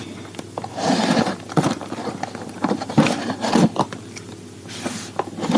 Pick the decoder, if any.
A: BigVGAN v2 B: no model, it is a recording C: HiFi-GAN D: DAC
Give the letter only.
A